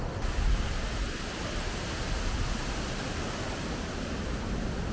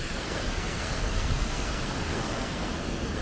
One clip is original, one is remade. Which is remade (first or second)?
second